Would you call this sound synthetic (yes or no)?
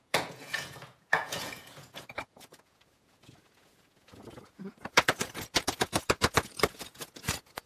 yes